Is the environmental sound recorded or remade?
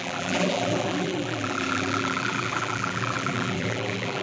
remade